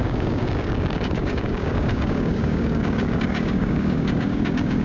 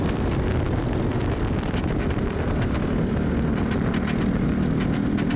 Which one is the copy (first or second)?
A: first